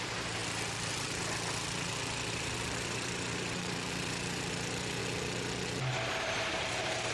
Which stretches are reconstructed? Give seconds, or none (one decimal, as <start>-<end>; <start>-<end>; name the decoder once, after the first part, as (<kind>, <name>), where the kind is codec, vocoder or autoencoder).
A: 0.0-0.4 (vocoder, BigVGAN v2); 2.3-5.0; 6.2-7.1